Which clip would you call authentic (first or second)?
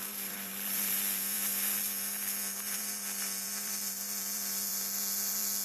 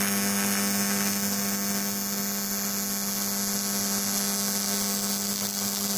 second